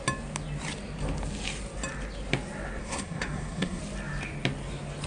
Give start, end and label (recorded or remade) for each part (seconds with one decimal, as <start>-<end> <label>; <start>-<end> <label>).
0.0-2.8 recorded; 2.8-3.8 remade; 3.8-5.1 recorded